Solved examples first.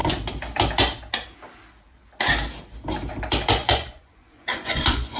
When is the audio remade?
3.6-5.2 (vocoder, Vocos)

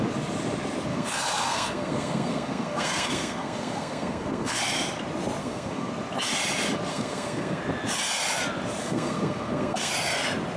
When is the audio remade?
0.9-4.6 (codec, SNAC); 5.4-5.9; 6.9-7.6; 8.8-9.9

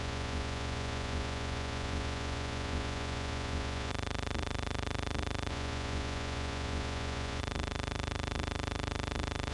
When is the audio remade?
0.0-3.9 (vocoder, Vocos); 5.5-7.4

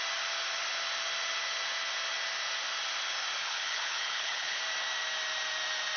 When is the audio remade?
3.4-4.6 (codec, HILCodec)

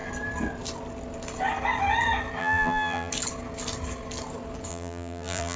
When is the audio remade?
2.4-3.1 (vocoder, BigVGAN v2); 4.7-5.6